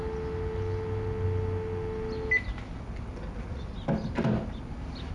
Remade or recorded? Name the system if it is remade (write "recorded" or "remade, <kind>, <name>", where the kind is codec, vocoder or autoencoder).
recorded